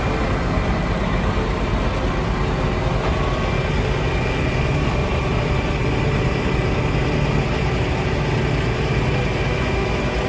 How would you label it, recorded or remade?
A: recorded